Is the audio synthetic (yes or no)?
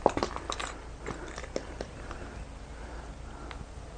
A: no